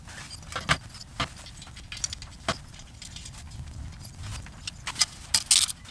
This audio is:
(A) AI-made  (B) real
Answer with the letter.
B